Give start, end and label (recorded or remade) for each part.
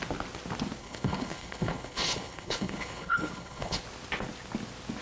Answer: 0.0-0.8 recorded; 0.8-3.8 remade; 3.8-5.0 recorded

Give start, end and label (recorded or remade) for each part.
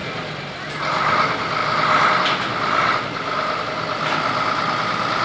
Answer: 0.0-5.2 recorded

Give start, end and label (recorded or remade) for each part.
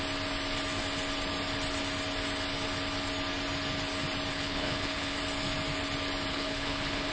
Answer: 0.0-4.3 recorded; 4.3-5.2 remade; 5.2-6.3 recorded; 6.3-7.1 remade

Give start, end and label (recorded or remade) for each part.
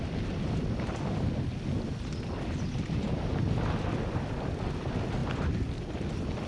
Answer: 0.0-6.5 recorded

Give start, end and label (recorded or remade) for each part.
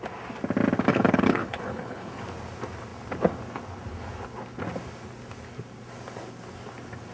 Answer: 0.0-0.9 recorded; 0.9-2.2 remade; 2.2-7.1 recorded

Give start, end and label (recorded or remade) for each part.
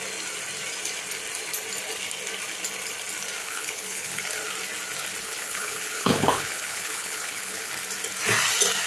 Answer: 0.0-3.4 recorded; 3.4-4.2 remade; 4.2-5.2 recorded; 5.2-7.7 remade; 7.7-8.9 recorded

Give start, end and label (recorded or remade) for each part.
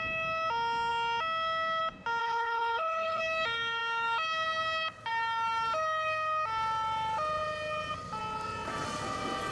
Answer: 0.0-2.2 recorded; 2.2-3.2 remade; 3.2-9.5 recorded